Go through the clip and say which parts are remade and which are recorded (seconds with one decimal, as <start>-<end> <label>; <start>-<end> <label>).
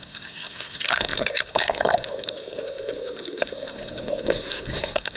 0.0-5.2 remade